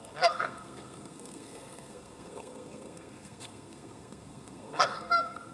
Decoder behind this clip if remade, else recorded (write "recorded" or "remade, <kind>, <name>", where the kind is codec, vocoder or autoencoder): remade, codec, SNAC